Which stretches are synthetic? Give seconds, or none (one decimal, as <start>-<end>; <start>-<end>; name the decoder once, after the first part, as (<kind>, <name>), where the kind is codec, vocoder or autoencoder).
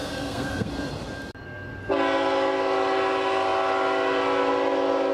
0.0-0.7 (codec, SNAC)